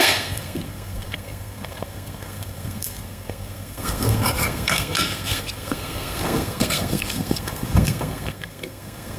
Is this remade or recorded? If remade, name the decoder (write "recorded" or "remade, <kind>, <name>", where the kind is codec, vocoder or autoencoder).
remade, codec, SNAC